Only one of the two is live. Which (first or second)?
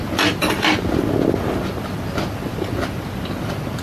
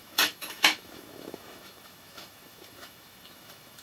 first